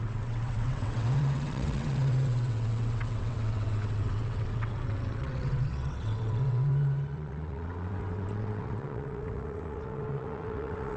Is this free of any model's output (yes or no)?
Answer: no